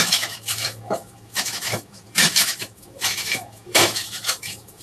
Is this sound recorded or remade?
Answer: remade